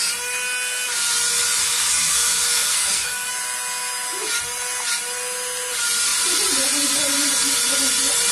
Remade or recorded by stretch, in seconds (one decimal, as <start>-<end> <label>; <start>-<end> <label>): 0.0-1.6 recorded; 1.6-3.3 remade; 3.3-8.3 recorded